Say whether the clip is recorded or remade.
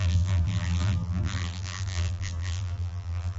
remade